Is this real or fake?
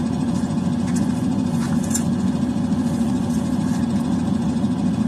fake